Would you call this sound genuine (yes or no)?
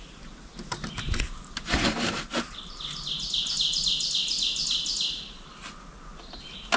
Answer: yes